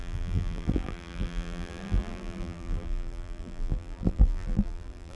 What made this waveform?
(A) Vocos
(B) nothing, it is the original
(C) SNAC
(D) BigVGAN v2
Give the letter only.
D